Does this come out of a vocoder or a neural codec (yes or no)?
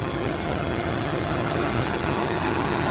yes